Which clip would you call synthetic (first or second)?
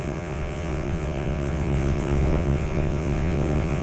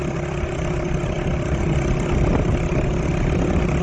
first